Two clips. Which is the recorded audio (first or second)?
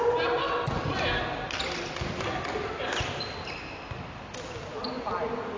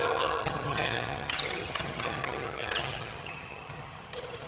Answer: first